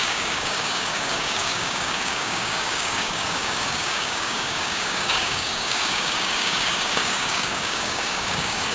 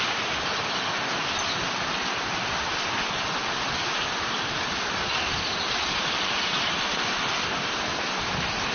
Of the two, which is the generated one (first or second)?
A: first